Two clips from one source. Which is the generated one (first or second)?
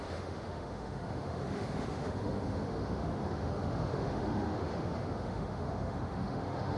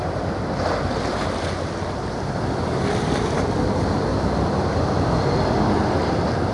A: first